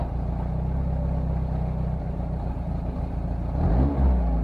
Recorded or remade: recorded